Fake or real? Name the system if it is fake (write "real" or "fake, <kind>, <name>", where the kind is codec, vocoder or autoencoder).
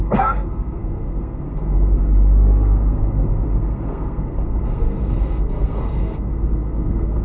fake, codec, SNAC